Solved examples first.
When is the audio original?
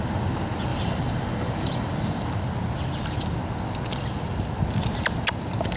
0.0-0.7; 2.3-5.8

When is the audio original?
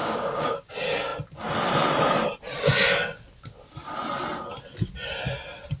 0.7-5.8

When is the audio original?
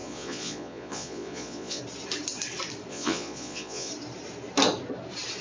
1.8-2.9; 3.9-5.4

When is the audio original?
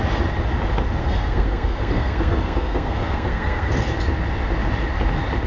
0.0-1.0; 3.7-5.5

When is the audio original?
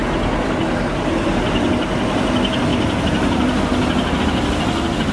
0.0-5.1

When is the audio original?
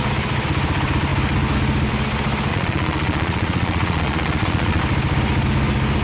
0.0-2.5; 4.8-6.0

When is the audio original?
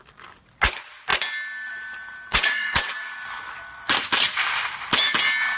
0.0-2.3; 2.9-5.6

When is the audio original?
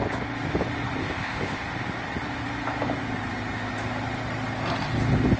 0.0-1.0; 1.6-5.4